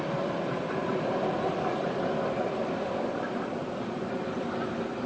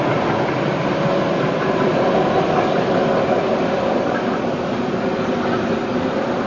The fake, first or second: first